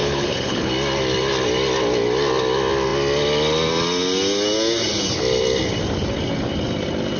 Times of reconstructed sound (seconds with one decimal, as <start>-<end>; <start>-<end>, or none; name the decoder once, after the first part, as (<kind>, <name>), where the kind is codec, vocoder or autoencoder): 0.0-0.7 (codec, HILCodec)